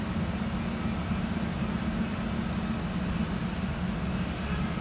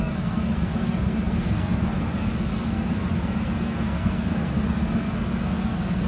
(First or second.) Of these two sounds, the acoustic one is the first